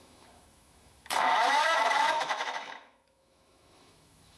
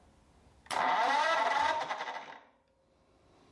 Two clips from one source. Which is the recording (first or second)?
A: second